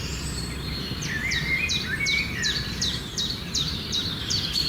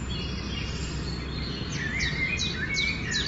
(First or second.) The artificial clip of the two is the first